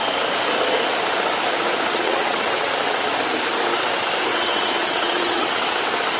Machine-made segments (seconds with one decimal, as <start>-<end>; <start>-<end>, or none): 1.9-3.1; 4.3-5.8